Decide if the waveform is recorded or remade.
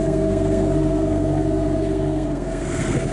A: remade